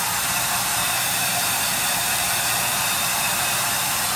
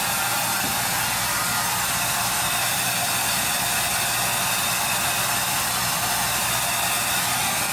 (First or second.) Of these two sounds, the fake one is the first